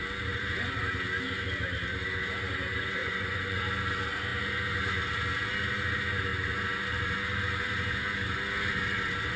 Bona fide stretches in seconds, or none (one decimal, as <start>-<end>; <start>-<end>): 0.0-3.0; 3.6-9.4